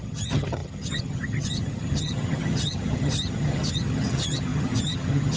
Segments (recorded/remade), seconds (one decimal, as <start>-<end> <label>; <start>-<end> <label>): 0.0-5.4 remade